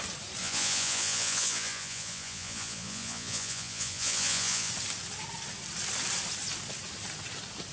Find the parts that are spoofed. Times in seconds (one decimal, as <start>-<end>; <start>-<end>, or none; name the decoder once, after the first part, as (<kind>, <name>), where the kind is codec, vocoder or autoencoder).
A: 0.4-4.7 (vocoder, Vocos)